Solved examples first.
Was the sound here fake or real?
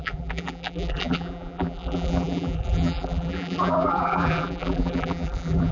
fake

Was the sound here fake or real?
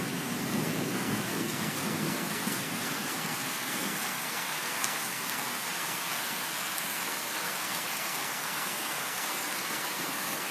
fake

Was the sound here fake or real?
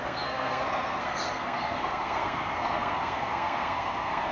fake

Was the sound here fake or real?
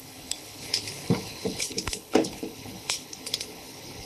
fake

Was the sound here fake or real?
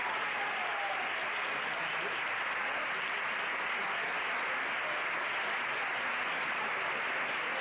real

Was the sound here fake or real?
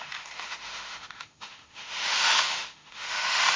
fake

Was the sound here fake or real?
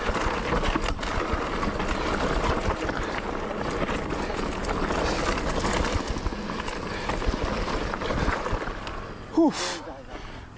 real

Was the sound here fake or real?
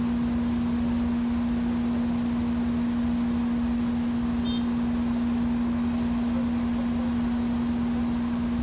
real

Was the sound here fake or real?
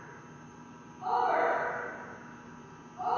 real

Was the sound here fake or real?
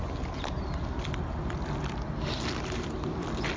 real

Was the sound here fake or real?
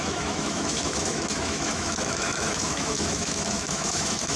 fake